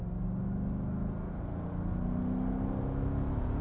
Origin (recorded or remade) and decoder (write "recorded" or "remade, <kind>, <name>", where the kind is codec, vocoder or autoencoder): recorded